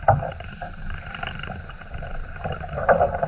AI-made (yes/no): yes